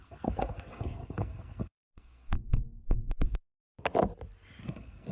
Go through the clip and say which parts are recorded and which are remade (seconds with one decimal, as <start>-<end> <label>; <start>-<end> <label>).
0.0-3.4 remade; 3.4-4.6 recorded; 4.6-5.1 remade